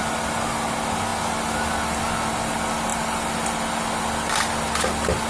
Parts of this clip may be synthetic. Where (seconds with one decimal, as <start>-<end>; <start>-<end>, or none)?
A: none